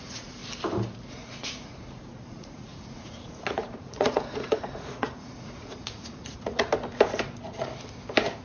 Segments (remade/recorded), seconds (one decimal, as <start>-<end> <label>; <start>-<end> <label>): 0.0-0.4 remade; 0.4-1.1 recorded; 1.1-6.7 remade; 6.7-8.4 recorded